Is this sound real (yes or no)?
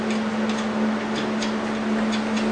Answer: yes